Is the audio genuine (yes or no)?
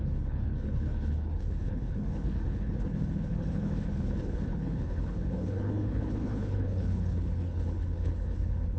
no